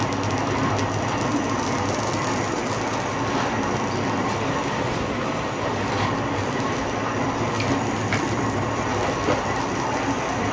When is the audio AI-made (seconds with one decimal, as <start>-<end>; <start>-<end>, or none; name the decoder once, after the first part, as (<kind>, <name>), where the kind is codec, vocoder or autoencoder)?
none

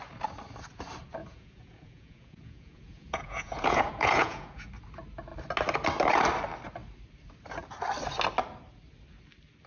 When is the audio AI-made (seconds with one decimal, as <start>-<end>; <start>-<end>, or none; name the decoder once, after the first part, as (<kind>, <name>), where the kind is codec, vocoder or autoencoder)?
1.2-4.7 (vocoder, Vocos)

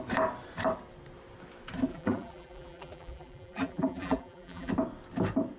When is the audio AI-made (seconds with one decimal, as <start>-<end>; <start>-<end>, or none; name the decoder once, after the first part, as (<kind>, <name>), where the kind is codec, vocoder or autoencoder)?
1.9-4.7 (vocoder, BigVGAN v2)

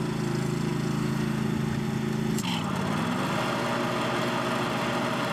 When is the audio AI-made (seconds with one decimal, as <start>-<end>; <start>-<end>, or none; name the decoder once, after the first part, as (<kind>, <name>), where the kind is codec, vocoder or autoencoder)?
none

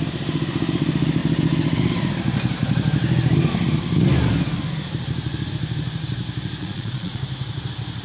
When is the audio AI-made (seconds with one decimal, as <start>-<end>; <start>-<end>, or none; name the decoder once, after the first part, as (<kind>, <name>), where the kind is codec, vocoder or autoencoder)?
6.6-7.2 (vocoder, Vocos)

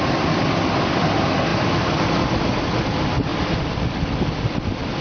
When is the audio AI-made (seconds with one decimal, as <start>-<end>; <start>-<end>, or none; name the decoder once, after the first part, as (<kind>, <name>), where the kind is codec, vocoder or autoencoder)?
3.3-4.6 (vocoder, BigVGAN v2)